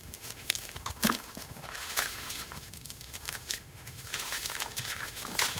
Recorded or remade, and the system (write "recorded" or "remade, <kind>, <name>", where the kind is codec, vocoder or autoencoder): remade, autoencoder, DAC-VAE